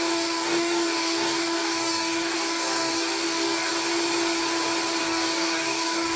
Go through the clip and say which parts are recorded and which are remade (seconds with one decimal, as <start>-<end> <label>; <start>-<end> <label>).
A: 0.0-3.7 remade; 3.7-5.0 recorded; 5.0-6.2 remade